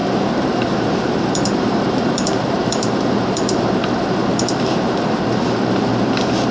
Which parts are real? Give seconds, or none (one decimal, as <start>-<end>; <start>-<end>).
5.9-6.5